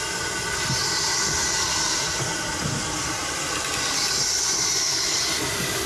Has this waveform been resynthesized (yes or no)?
no